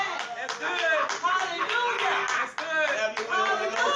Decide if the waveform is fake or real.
real